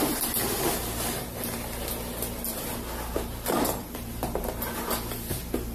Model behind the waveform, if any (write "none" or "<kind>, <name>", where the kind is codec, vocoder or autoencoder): none